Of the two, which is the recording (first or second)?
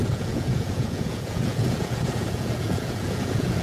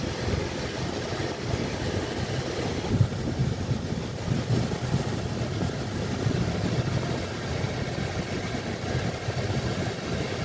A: second